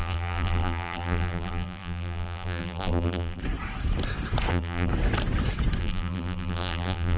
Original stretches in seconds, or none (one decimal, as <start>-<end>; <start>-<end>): 3.4-4.5; 4.9-5.8